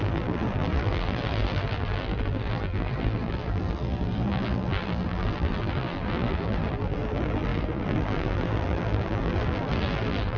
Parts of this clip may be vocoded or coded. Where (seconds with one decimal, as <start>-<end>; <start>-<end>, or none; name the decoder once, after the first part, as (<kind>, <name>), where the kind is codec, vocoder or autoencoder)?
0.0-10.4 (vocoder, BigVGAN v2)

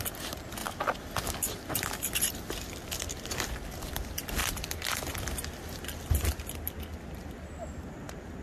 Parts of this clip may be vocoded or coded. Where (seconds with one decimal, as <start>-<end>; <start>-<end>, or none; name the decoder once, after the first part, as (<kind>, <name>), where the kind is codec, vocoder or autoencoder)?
none

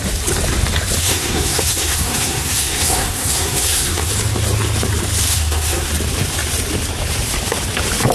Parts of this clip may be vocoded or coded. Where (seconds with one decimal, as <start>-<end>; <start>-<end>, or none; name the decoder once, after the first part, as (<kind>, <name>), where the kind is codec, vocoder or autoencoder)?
1.0-4.1 (codec, SNAC); 5.3-5.9

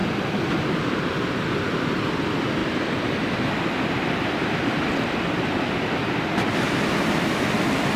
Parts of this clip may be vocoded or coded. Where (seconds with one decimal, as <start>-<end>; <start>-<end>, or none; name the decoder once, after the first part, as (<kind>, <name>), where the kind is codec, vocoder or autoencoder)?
none

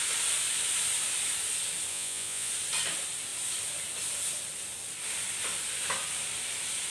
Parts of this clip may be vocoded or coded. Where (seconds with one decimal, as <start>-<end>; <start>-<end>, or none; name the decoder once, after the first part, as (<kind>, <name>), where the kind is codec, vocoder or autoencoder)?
1.9-2.5 (vocoder, Vocos)

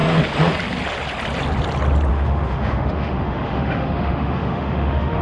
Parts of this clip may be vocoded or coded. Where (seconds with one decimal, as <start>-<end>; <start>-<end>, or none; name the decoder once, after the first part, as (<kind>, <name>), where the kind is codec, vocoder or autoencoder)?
2.1-5.2 (autoencoder, DAC-VAE)

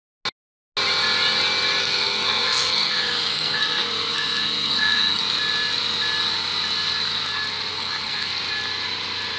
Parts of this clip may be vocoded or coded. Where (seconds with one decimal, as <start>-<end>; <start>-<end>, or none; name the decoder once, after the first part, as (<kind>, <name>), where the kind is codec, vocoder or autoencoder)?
1.8-5.2 (codec, SNAC); 7.7-8.3